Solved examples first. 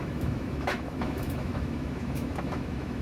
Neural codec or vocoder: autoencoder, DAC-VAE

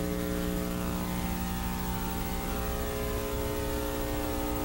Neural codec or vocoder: none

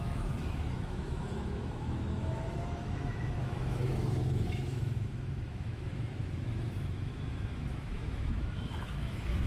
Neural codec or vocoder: autoencoder, DAC-VAE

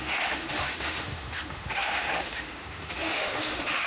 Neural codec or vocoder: autoencoder, DAC-VAE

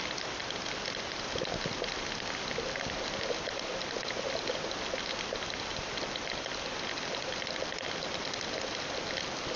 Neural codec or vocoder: none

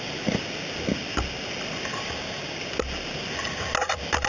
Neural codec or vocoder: none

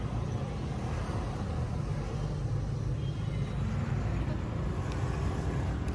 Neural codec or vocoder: none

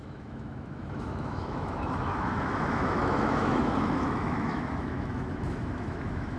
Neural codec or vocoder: autoencoder, DAC-VAE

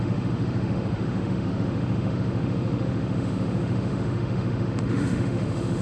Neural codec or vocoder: autoencoder, DAC-VAE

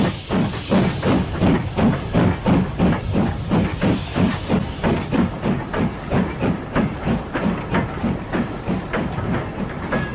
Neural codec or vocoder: none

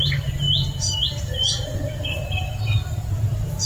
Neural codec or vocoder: none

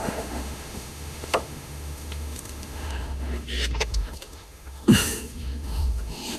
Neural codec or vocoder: autoencoder, DAC-VAE